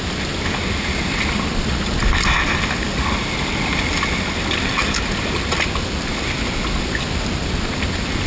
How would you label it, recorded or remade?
recorded